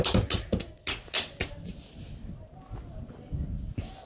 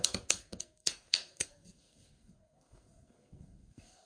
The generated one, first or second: second